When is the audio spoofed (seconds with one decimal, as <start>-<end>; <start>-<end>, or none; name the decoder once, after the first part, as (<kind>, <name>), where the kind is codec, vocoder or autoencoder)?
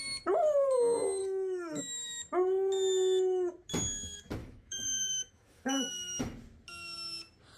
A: 1.2-1.8 (autoencoder, DAC-VAE); 4.4-5.9